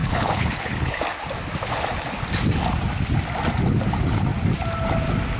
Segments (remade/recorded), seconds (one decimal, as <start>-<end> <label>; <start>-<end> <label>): 0.0-1.0 remade; 1.0-5.4 recorded